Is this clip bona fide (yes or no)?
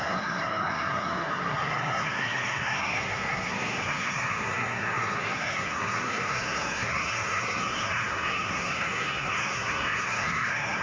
no